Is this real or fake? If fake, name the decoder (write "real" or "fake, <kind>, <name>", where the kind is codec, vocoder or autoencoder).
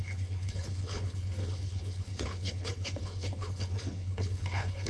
fake, codec, HILCodec